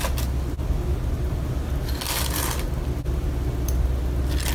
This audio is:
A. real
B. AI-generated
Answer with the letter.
A